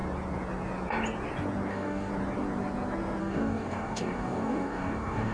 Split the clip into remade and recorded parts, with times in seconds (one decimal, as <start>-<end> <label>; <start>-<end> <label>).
0.0-1.7 recorded; 1.7-2.1 remade; 2.1-3.2 recorded; 3.2-5.3 remade